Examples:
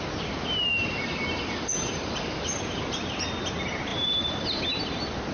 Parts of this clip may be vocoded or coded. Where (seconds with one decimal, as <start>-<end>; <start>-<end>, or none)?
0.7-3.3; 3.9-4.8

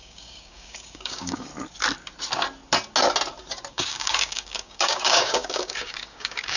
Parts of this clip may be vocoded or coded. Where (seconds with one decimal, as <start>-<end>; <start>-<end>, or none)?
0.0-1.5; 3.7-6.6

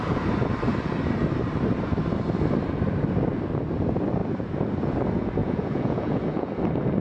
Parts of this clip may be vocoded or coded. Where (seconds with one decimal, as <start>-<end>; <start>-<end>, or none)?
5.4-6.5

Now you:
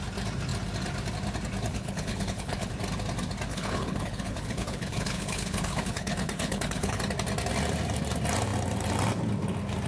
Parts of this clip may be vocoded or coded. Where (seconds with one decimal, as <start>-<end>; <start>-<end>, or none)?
1.7-2.7; 3.5-7.0

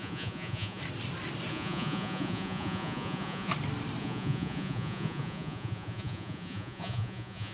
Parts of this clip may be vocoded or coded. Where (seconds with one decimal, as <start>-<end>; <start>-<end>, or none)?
0.0-0.8; 1.5-3.5; 4.0-7.5

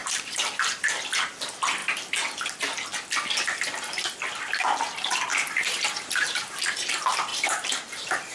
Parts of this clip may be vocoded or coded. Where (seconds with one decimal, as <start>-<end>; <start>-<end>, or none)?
0.0-0.8; 5.3-6.4; 7.3-8.3